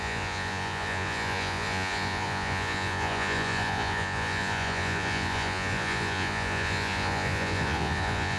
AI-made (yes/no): yes